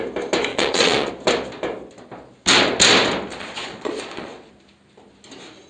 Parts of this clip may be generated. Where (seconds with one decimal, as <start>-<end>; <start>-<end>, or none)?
0.5-1.1; 3.3-4.5